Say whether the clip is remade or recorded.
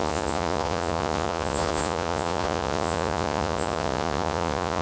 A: remade